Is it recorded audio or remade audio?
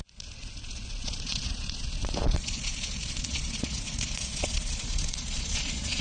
remade